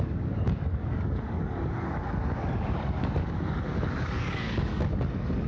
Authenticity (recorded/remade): remade